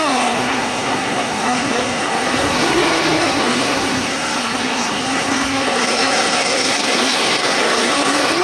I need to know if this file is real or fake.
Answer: fake